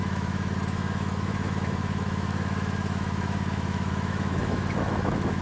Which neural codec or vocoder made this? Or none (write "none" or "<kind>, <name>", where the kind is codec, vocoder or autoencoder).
autoencoder, DAC-VAE